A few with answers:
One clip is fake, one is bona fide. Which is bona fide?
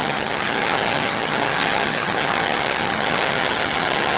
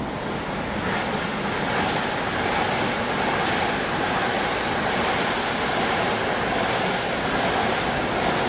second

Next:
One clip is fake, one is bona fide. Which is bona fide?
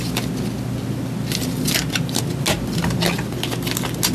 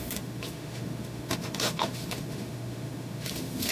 first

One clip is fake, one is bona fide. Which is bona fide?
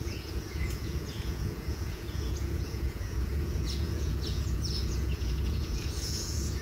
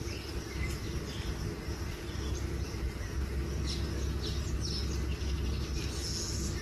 second